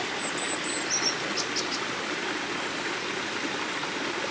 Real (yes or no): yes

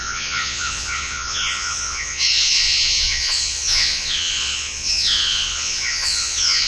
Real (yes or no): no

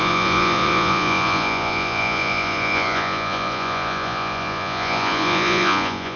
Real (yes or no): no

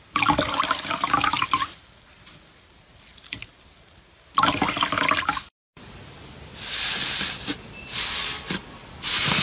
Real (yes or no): yes